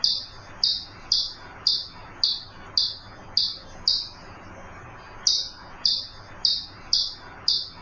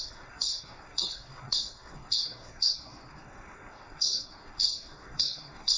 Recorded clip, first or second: first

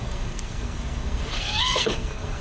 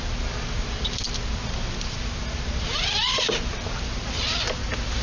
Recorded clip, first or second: second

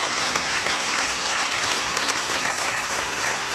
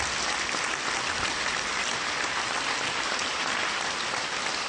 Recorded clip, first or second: second